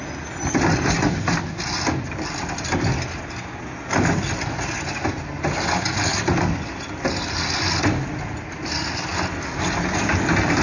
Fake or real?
real